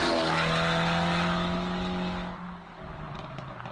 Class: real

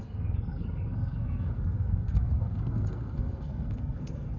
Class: fake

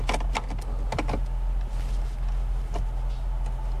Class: real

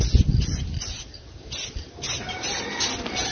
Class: real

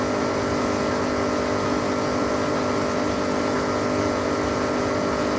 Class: real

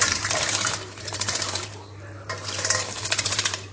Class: fake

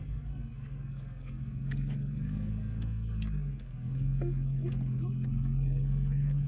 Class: fake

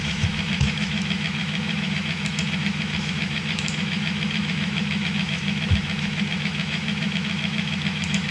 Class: fake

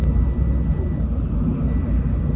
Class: real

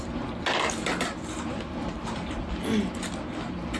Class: real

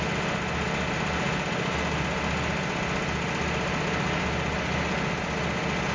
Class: real